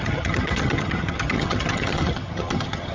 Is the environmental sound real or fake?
fake